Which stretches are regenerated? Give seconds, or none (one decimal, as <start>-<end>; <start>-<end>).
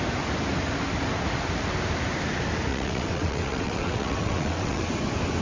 2.7-4.9